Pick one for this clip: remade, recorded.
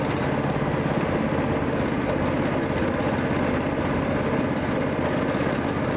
recorded